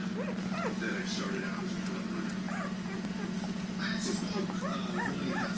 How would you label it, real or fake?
real